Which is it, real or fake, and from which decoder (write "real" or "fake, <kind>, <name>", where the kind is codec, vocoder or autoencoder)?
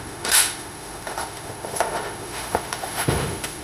fake, autoencoder, DAC-VAE